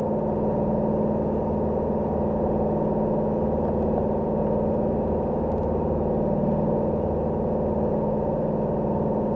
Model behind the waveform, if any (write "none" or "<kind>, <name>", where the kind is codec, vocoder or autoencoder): none